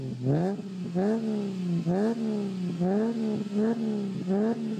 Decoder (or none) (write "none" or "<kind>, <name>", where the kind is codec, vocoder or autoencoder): none